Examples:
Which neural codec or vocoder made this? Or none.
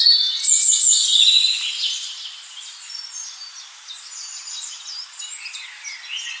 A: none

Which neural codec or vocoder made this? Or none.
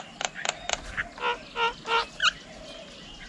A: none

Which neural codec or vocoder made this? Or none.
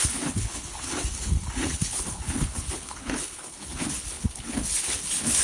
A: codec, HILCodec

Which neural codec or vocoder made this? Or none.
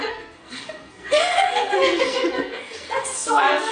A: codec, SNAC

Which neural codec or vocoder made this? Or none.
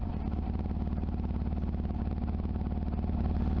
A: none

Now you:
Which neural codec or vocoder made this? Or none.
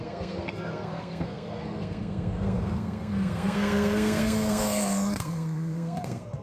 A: codec, SNAC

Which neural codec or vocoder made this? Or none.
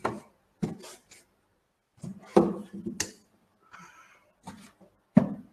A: none